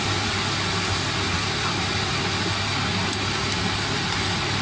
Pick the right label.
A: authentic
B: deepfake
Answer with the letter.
A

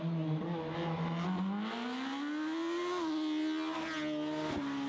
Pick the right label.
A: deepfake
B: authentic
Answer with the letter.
B